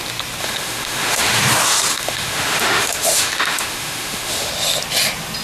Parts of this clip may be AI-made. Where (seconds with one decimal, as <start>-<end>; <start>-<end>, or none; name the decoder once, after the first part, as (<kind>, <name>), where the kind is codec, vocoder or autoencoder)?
0.4-1.4 (autoencoder, DAC-VAE); 1.9-4.5